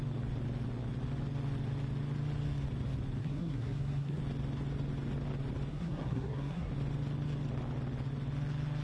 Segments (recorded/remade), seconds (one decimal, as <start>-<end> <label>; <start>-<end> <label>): 0.0-3.2 recorded; 3.2-4.2 remade; 4.2-5.7 recorded; 5.7-6.7 remade; 6.7-8.8 recorded